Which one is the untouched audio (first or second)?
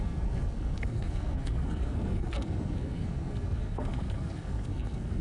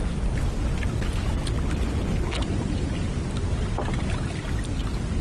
second